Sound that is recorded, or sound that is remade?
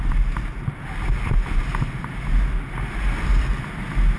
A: recorded